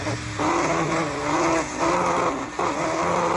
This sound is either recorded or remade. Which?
recorded